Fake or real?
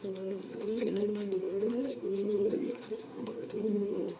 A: fake